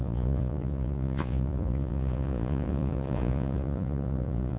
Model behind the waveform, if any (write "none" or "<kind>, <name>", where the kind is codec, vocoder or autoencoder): vocoder, Vocos